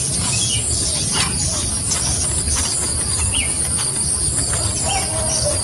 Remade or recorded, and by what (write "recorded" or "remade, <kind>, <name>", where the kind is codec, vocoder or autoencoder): recorded